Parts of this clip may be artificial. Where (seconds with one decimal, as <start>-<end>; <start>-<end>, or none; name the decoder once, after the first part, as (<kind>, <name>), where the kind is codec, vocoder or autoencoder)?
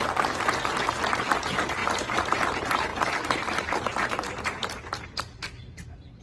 none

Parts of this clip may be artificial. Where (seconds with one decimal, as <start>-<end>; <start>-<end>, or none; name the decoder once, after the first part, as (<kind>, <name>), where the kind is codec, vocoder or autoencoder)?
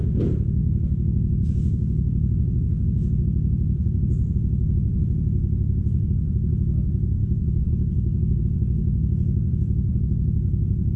0.6-3.2 (codec, DAC); 7.2-8.4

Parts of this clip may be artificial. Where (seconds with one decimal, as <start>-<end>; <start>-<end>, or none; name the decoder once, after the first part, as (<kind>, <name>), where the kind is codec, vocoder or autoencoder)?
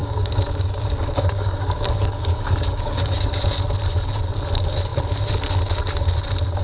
0.0-3.5 (codec, DAC)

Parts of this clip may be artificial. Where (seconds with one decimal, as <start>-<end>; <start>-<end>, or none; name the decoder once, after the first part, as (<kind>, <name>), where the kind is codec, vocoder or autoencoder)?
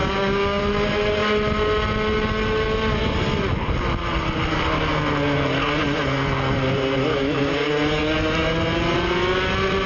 0.0-0.6 (codec, DAC); 7.1-7.7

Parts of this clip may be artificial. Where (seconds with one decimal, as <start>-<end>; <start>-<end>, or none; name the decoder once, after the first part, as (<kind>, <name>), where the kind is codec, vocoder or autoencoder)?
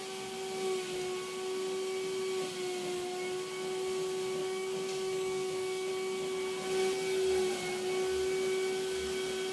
4.4-5.9 (codec, DAC)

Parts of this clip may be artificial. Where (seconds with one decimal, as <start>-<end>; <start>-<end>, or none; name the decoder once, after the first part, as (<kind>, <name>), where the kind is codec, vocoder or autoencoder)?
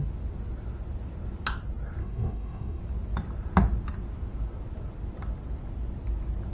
2.0-2.8 (codec, DAC)